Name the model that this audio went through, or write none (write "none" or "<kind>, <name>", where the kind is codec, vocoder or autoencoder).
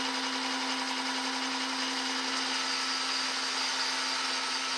none